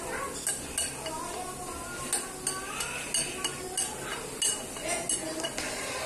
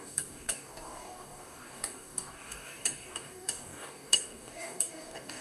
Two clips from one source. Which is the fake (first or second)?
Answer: second